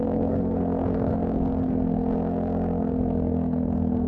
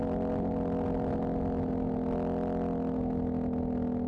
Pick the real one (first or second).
second